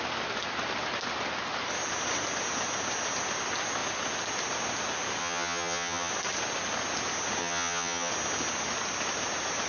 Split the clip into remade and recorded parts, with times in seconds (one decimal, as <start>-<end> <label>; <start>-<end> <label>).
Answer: 0.0-5.2 recorded; 5.2-6.1 remade; 6.1-7.4 recorded; 7.4-8.1 remade; 8.1-9.7 recorded